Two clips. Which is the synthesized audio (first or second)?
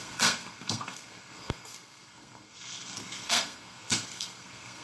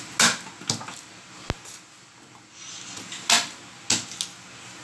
first